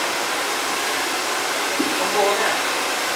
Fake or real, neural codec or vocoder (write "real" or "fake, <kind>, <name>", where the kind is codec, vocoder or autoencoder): real